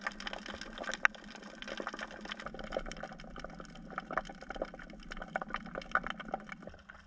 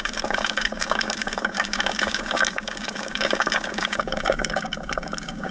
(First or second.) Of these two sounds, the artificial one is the second